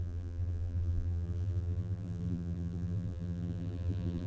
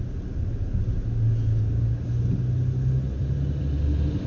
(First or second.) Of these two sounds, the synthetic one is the first